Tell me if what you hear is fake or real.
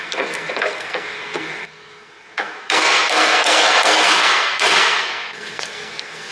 fake